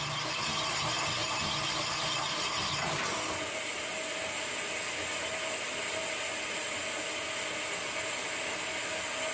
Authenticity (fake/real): real